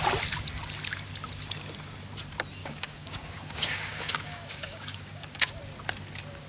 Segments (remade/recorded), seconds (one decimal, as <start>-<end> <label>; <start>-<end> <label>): 0.0-2.6 recorded; 2.6-5.5 remade; 5.5-6.5 recorded